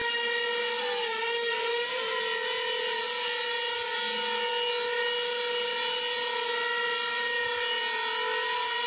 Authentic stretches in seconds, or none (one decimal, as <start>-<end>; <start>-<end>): 0.0-8.9